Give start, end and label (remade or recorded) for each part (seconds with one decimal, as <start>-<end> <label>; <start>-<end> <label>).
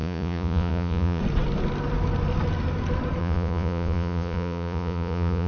0.0-1.2 remade; 1.2-3.2 recorded; 3.2-5.5 remade